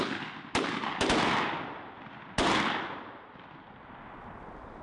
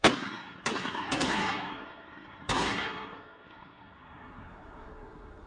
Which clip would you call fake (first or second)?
second